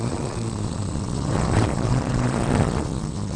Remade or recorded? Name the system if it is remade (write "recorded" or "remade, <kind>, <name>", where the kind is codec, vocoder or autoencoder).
remade, vocoder, Vocos